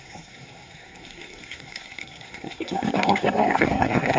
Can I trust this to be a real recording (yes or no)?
no